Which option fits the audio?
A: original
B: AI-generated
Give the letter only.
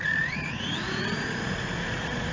B